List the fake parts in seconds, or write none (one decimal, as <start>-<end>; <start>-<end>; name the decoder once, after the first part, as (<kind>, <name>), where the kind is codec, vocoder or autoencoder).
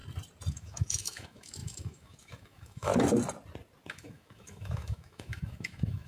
0.5-2.9 (autoencoder, DAC-VAE); 3.9-6.1